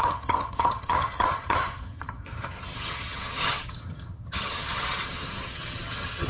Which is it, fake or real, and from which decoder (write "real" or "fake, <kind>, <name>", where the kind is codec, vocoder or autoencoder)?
fake, vocoder, HiFi-GAN